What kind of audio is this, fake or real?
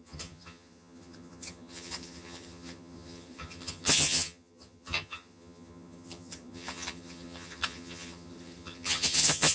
fake